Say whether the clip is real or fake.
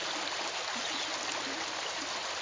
real